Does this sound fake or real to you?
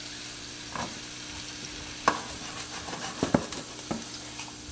real